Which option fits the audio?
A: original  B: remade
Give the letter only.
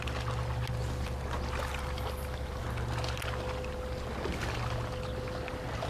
A